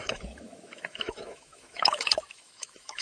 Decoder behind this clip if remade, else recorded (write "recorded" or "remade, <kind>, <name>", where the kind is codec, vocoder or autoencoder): remade, autoencoder, DAC-VAE